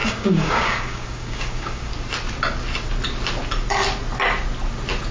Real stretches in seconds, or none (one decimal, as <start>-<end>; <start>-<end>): 1.9-5.1